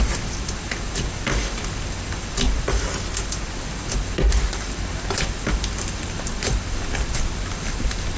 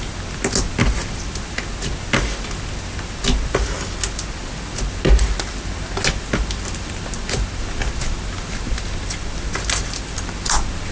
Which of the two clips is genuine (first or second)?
second